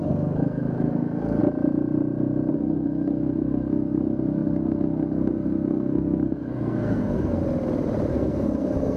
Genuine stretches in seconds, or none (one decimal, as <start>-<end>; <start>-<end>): 1.4-2.5; 7.4-8.1